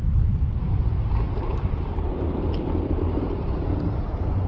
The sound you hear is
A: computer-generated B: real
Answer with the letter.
A